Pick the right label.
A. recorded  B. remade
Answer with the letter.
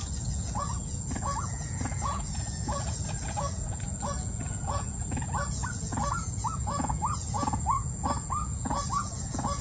B